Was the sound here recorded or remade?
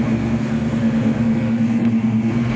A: remade